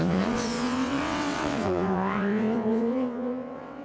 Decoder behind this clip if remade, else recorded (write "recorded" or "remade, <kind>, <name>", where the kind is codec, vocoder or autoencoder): remade, vocoder, WaveNeXt